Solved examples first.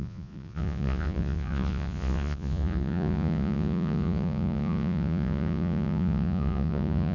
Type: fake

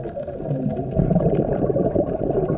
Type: real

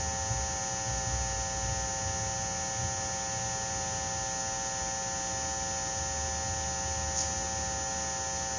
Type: real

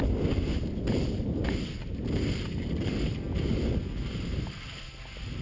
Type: real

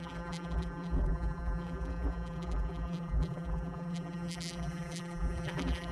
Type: fake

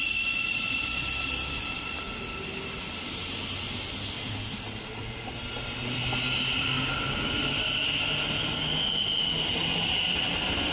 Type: real